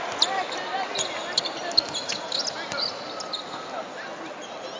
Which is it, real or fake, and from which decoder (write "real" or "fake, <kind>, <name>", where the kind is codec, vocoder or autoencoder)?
real